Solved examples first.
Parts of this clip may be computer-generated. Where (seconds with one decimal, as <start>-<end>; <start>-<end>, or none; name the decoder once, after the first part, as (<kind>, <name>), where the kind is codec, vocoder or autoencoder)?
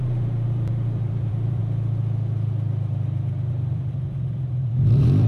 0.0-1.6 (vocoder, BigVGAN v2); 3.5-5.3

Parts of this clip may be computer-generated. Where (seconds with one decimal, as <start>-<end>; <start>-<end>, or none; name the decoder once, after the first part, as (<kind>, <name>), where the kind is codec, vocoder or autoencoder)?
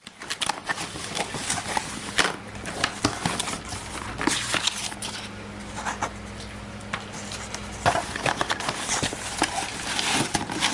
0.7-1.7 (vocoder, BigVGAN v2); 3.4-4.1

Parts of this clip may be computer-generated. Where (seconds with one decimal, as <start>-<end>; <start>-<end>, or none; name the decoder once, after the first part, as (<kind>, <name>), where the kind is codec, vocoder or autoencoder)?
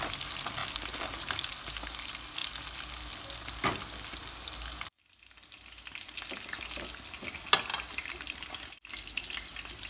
7.7-8.4 (vocoder, BigVGAN v2)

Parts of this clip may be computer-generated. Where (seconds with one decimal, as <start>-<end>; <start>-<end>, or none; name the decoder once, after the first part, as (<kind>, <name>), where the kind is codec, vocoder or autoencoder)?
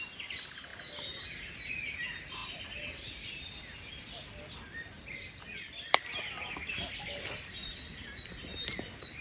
0.0-0.7 (vocoder, BigVGAN v2); 1.4-9.2